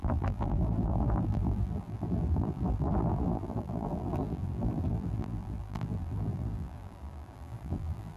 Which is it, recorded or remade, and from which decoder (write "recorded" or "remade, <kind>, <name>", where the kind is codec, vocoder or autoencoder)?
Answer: remade, vocoder, BigVGAN v2